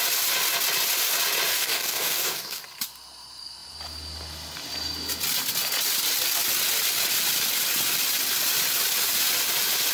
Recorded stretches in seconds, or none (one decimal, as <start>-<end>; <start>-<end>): 0.0-1.5; 2.6-9.9